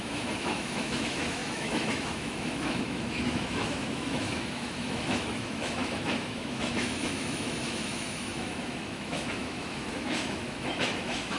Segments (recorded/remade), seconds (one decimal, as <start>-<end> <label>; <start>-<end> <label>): 0.0-11.4 remade

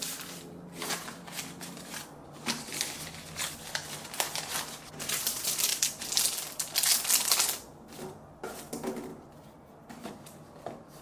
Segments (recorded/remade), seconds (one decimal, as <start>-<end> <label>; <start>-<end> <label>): 0.0-11.0 recorded

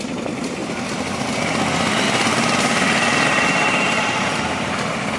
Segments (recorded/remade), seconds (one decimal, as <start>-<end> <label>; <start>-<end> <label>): 0.0-5.2 recorded

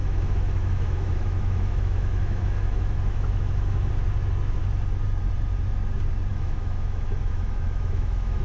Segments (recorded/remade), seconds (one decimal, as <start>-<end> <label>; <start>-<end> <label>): 0.0-3.9 remade; 3.9-6.3 recorded; 6.3-8.4 remade

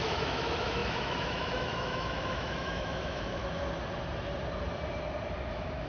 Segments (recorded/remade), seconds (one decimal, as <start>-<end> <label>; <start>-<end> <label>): 0.0-3.4 remade; 3.4-5.5 recorded; 5.5-5.9 remade

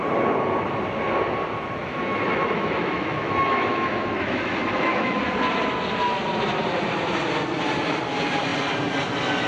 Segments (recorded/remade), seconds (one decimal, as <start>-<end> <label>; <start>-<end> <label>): 0.0-1.8 recorded; 1.8-5.2 remade; 5.2-9.5 recorded

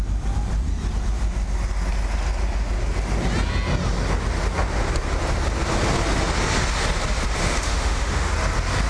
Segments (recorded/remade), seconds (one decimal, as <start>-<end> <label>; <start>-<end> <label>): 0.0-7.4 recorded; 7.4-8.3 remade; 8.3-8.9 recorded